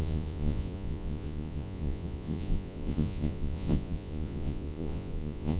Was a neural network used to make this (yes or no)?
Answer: yes